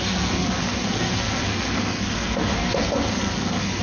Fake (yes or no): yes